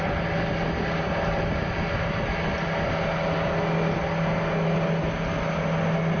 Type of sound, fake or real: real